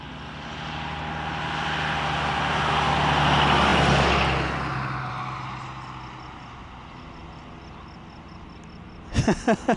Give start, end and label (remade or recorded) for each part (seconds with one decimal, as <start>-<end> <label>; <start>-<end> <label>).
0.0-9.8 recorded